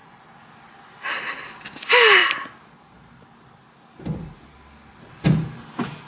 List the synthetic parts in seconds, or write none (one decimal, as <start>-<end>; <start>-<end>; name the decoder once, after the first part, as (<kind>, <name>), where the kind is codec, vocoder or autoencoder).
none